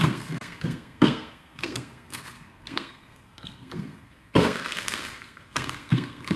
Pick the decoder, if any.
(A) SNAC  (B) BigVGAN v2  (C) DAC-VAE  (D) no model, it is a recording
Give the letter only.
A